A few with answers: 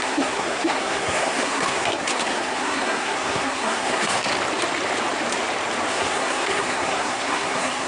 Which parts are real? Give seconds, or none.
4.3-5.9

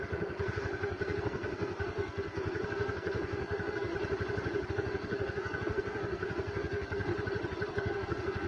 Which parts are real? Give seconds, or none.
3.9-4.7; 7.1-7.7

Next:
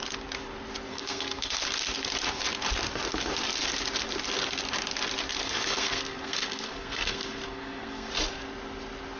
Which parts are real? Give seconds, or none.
0.0-0.9; 1.6-5.4; 8.1-9.2

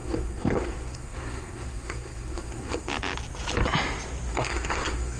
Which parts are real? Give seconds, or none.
2.9-4.3